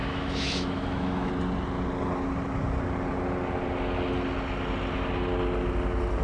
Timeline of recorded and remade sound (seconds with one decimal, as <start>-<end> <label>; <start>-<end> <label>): 0.0-1.3 remade; 1.3-6.2 recorded